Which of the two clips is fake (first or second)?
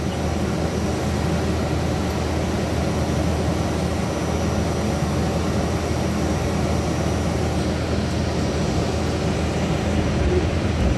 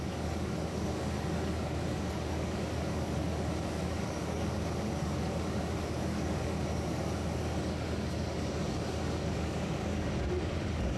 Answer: second